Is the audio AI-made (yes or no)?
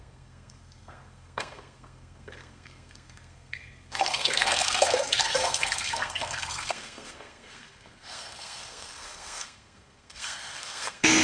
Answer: yes